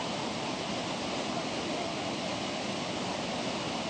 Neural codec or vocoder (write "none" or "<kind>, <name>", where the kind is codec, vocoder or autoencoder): none